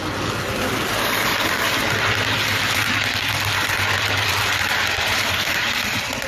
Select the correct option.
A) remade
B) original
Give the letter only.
B